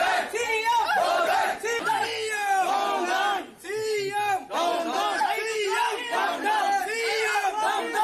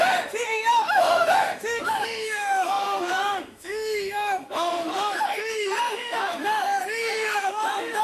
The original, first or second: first